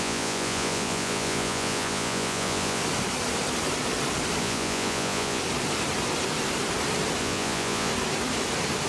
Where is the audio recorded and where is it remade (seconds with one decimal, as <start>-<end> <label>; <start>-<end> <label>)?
0.0-2.8 remade; 2.8-4.4 recorded; 4.4-5.4 remade; 5.4-7.2 recorded; 7.2-7.9 remade; 7.9-8.9 recorded